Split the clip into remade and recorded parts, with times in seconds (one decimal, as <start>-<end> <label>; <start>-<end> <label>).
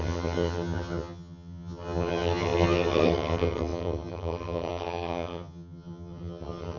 0.0-6.8 remade